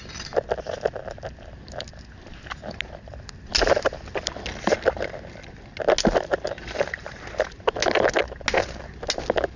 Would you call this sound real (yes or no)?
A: yes